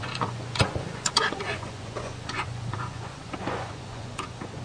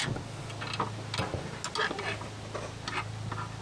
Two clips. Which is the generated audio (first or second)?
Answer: first